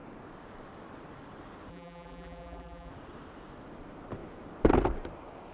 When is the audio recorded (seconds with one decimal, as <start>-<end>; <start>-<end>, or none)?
0.0-1.7; 2.9-5.5